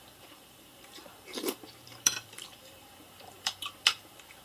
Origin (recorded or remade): remade